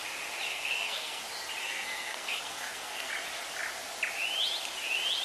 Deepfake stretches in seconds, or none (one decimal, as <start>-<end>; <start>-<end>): 0.5-1.2; 1.6-3.1